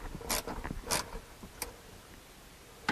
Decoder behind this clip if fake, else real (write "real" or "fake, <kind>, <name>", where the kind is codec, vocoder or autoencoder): real